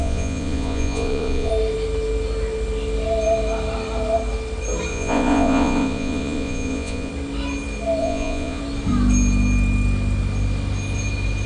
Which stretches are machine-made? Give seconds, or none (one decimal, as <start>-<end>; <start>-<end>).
0.0-1.5; 4.9-7.1; 8.0-8.6